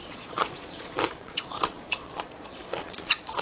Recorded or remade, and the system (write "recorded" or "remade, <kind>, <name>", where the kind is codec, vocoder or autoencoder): remade, vocoder, Vocos